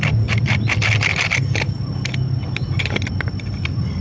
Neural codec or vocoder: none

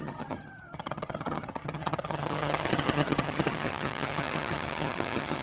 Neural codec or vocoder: vocoder, HiFi-GAN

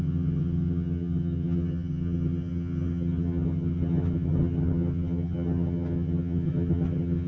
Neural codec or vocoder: vocoder, HiFi-GAN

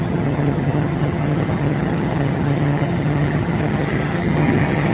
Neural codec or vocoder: vocoder, HiFi-GAN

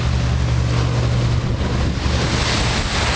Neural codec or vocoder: none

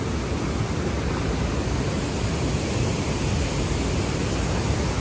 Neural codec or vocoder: none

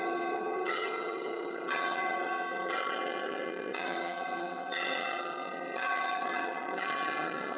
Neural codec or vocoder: vocoder, HiFi-GAN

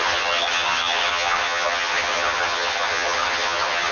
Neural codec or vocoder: vocoder, HiFi-GAN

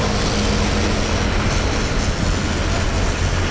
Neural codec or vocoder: none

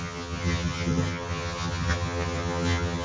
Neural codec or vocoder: vocoder, HiFi-GAN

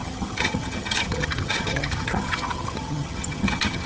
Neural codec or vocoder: vocoder, HiFi-GAN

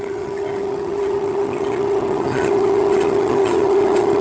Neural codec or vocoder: vocoder, HiFi-GAN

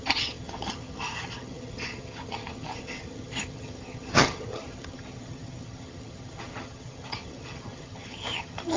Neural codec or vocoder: vocoder, HiFi-GAN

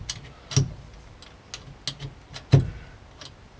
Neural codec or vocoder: none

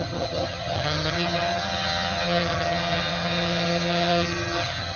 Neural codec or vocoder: vocoder, HiFi-GAN